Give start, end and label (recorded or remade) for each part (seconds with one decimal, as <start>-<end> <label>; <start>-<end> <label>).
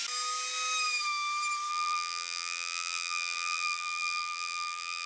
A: 0.0-1.7 recorded; 1.7-5.1 remade